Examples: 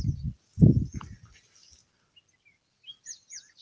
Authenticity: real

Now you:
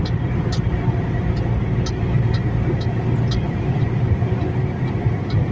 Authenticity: real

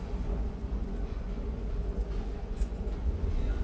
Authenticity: fake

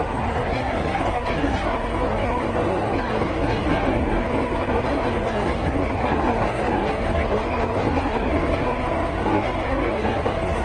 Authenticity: fake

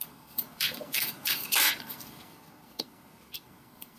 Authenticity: fake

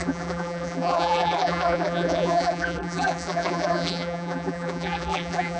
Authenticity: fake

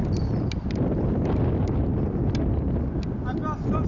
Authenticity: real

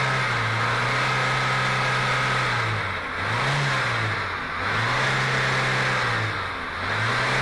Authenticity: real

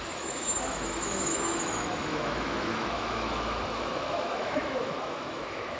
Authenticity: fake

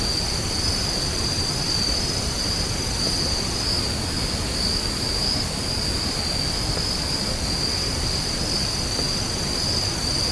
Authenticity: real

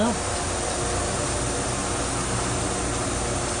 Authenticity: real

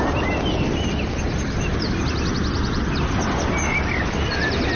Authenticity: real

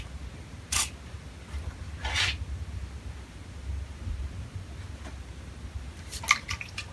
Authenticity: real